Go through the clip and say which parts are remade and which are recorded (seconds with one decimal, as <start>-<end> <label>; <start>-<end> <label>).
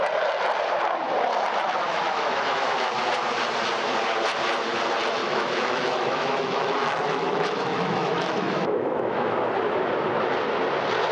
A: 0.0-1.9 recorded; 1.9-2.9 remade; 2.9-5.2 recorded; 5.2-9.4 remade; 9.4-11.1 recorded